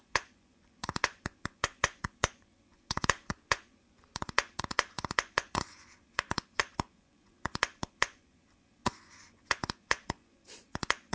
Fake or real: fake